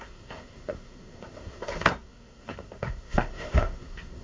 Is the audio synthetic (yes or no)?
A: yes